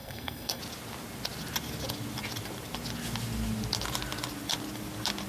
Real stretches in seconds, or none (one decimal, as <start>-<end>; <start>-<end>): 0.6-5.3